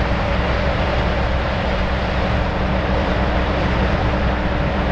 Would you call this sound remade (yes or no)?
yes